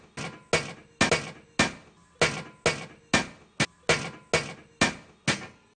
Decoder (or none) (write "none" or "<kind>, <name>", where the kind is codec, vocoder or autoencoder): none